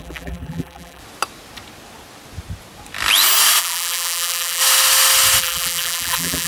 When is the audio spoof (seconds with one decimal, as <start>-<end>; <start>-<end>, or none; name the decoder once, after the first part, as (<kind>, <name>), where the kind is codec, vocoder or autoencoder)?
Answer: 0.0-1.0 (vocoder, BigVGAN v2); 3.6-4.6; 5.4-6.5